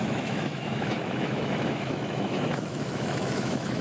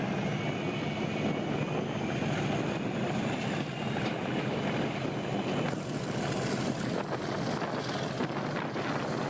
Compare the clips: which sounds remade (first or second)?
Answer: first